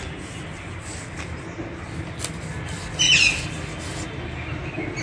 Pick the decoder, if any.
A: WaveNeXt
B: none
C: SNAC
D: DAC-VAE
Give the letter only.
B